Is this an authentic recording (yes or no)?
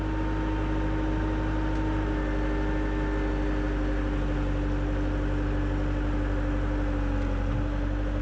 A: yes